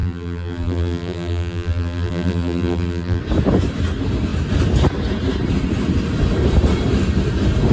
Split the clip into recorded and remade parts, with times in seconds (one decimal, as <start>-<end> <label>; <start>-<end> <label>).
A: 0.0-3.2 remade; 3.2-7.7 recorded